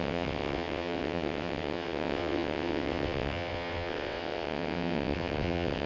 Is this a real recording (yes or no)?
no